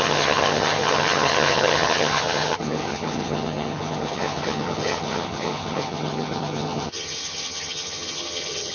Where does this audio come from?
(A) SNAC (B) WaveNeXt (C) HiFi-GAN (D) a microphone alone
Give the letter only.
C